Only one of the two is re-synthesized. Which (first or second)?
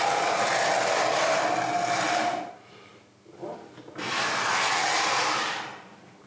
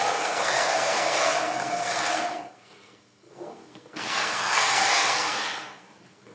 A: second